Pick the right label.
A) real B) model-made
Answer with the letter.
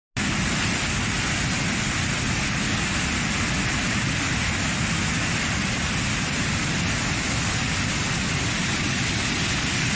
A